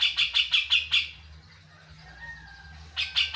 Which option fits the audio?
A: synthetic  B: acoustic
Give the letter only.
B